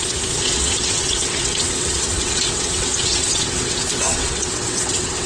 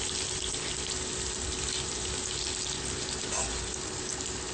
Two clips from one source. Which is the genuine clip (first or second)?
second